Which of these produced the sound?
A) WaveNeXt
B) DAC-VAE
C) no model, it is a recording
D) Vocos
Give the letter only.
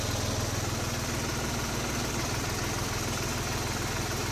C